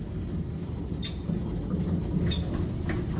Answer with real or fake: real